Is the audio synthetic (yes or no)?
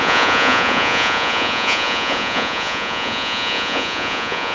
yes